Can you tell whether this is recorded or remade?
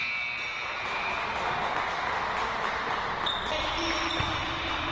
recorded